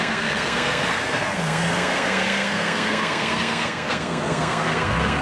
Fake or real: fake